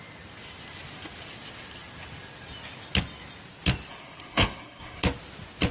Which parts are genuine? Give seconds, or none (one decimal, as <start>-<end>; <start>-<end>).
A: 0.0-3.9; 5.0-5.7